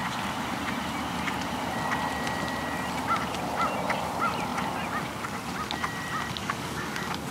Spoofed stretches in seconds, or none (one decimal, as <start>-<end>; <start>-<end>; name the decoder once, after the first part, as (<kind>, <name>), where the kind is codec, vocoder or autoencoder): 6.4-7.3 (codec, DAC)

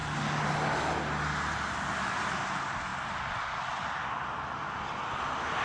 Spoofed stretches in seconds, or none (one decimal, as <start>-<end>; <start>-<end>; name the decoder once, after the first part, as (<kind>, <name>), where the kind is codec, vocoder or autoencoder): none

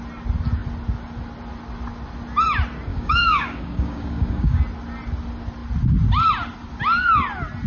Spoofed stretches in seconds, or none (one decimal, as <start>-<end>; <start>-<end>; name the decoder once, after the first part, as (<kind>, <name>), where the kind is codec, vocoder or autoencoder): 2.9-4.6 (codec, DAC)

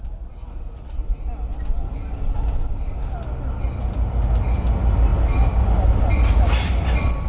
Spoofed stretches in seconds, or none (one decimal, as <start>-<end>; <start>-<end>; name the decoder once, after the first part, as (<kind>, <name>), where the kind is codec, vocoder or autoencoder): none

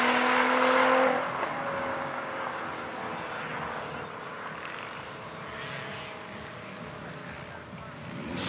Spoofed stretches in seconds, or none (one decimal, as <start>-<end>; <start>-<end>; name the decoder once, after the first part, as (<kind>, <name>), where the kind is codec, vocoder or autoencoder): 1.9-2.6 (codec, DAC)

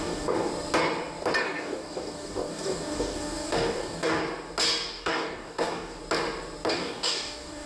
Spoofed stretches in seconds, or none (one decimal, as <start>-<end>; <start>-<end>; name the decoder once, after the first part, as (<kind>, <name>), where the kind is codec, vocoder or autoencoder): 0.0-0.5 (codec, DAC); 1.4-4.2; 4.9-6.0; 6.7-7.7

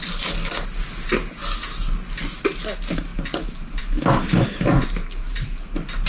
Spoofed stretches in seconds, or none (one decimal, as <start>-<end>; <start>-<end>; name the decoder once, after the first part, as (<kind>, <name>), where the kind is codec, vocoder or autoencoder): none

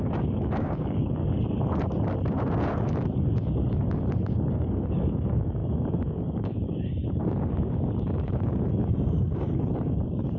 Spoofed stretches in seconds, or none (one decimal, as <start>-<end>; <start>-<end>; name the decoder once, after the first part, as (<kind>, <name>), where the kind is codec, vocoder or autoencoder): 0.0-1.2 (codec, DAC); 4.5-10.4